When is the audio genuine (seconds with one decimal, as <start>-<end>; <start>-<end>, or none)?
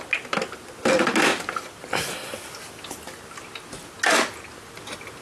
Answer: 0.0-5.2